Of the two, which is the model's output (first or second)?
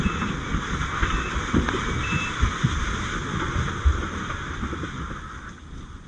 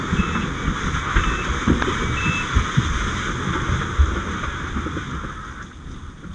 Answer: first